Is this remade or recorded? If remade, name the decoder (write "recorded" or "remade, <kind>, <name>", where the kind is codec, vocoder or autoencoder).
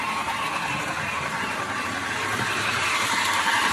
remade, vocoder, BigVGAN v2